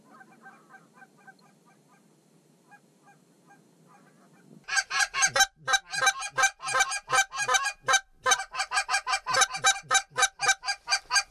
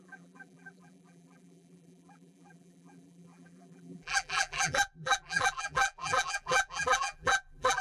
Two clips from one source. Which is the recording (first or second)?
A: first